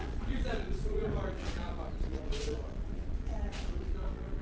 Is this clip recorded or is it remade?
remade